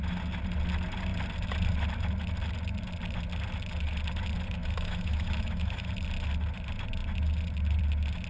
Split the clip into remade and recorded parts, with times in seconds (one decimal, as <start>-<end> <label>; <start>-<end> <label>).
0.0-4.6 recorded; 4.6-5.9 remade; 5.9-8.3 recorded